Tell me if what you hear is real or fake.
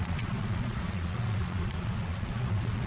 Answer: fake